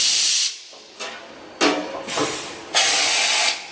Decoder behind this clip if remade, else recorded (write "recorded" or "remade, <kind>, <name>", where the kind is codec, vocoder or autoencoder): recorded